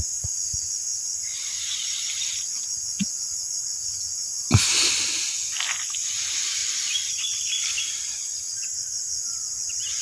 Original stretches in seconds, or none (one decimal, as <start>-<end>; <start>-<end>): 0.0-6.6; 7.8-10.0